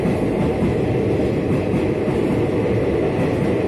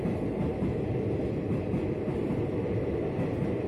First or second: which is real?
first